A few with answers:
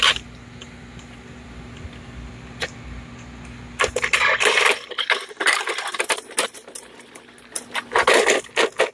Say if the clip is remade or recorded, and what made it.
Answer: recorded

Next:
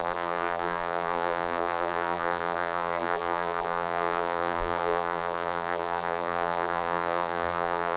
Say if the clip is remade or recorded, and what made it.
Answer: remade, vocoder, BigVGAN v2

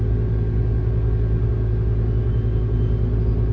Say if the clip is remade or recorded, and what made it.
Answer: recorded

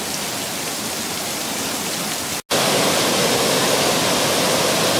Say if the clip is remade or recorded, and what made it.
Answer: recorded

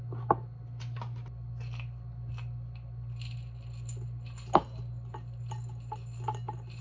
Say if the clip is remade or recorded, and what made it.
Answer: recorded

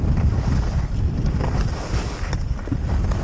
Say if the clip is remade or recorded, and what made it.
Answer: recorded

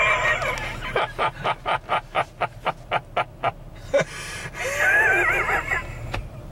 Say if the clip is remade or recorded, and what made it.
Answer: recorded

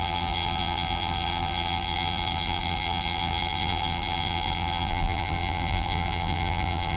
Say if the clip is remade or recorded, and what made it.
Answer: remade, vocoder, BigVGAN v2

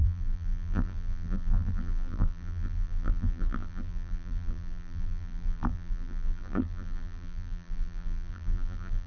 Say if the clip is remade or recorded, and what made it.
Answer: remade, vocoder, BigVGAN v2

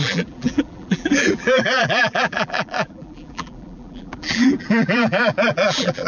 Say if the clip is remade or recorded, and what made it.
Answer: remade, vocoder, BigVGAN v2